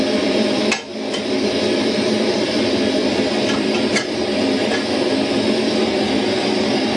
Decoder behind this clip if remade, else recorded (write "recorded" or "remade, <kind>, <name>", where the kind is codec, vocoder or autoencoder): recorded